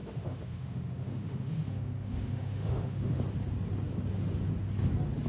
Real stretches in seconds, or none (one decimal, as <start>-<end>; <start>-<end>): 3.2-5.3